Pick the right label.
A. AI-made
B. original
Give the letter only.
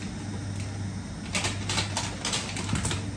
B